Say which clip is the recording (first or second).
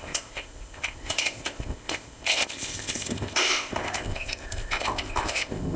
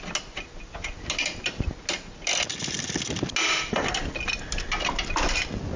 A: second